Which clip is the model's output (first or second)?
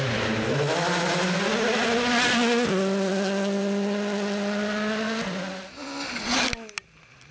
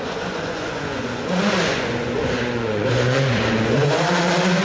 second